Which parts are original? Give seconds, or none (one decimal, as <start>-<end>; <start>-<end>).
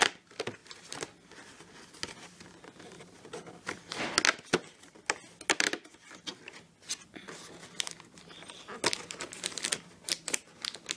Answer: 0.0-11.0